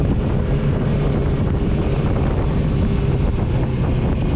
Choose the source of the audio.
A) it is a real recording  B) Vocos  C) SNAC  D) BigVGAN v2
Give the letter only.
A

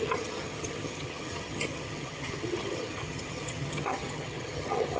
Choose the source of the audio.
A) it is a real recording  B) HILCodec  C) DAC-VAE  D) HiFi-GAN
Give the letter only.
D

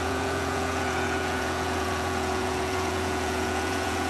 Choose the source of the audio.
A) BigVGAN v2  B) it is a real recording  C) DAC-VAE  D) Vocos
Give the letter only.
D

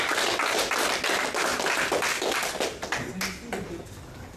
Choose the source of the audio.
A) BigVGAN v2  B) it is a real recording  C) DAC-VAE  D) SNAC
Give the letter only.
B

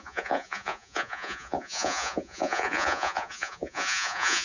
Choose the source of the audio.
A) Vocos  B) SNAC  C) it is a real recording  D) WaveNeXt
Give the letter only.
A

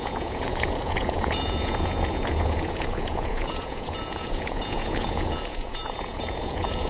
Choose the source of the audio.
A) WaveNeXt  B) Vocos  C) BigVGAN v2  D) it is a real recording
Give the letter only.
B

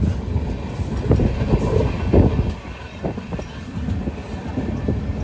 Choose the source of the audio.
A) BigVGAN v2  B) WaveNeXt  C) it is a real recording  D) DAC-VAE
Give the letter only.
C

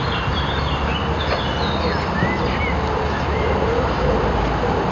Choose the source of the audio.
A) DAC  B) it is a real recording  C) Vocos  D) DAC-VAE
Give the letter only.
B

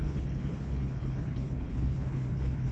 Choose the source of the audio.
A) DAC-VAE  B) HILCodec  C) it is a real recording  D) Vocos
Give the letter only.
B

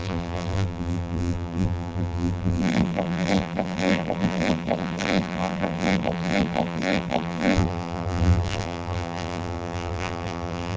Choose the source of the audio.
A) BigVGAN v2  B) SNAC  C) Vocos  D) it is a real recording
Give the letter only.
A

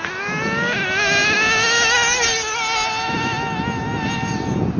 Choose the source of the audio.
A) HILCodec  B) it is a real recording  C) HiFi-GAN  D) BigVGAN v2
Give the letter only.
B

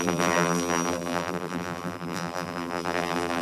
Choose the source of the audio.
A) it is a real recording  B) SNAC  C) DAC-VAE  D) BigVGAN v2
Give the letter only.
D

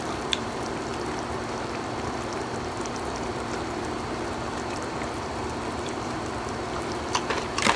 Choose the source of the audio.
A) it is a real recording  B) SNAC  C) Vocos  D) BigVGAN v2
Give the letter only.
D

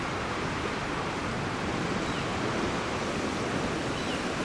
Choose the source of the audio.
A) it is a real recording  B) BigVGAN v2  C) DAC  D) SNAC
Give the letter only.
A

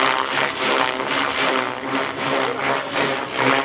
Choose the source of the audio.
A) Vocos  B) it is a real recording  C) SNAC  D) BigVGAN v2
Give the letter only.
B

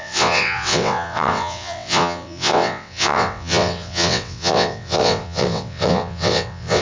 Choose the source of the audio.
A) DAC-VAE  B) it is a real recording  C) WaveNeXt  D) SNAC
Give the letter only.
C